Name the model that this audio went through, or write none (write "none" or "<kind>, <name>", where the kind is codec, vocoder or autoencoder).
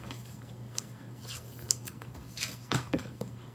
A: codec, SNAC